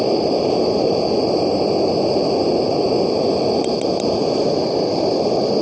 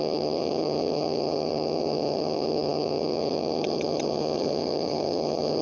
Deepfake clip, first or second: second